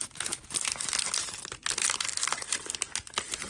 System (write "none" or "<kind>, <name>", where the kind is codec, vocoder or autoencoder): none